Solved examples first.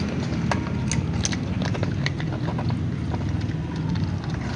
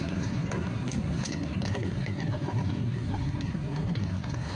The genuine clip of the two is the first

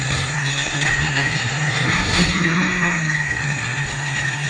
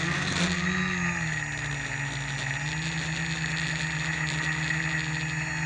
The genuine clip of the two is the second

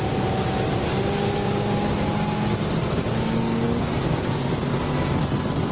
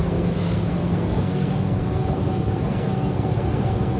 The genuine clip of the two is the first